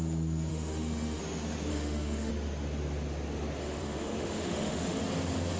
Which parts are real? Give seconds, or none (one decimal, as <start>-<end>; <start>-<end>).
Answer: 0.0-0.5; 1.2-1.7; 2.3-3.6; 5.0-5.6